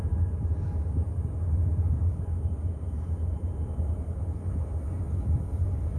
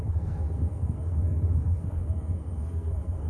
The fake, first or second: second